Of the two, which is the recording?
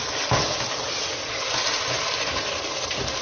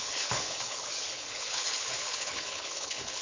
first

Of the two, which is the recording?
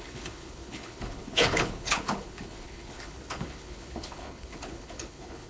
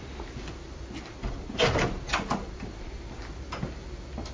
second